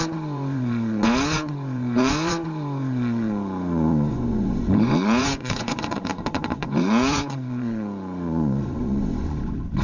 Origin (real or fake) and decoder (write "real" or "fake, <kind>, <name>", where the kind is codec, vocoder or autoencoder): fake, vocoder, Vocos